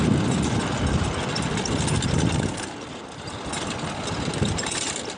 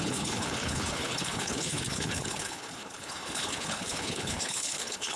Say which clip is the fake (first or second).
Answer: second